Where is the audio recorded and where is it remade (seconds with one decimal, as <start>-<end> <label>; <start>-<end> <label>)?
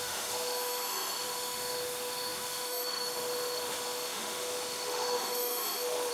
0.0-6.1 remade